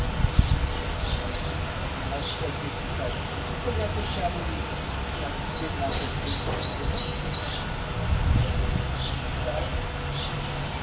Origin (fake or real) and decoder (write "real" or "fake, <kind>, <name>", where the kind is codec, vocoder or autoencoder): real